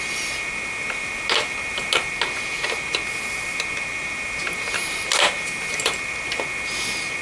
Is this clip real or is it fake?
real